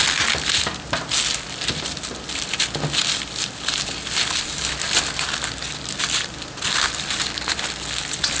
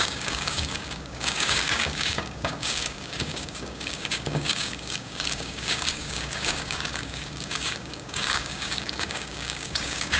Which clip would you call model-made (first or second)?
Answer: second